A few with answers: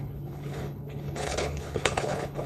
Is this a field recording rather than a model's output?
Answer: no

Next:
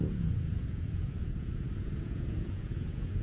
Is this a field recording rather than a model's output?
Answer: no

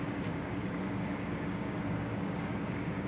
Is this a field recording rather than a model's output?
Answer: no